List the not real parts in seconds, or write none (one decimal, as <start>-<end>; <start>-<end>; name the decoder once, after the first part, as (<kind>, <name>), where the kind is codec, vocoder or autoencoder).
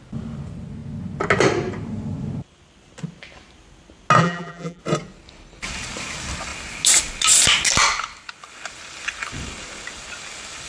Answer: 4.2-4.8 (vocoder, BigVGAN v2)